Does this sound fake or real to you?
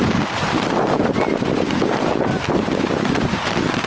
fake